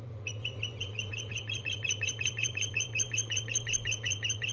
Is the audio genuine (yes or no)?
no